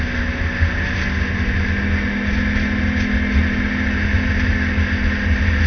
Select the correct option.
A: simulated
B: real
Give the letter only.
B